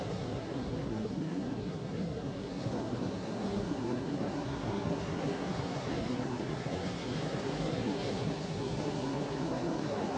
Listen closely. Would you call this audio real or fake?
fake